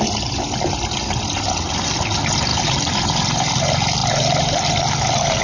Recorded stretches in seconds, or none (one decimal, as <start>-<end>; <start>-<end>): 0.0-2.5; 3.5-5.4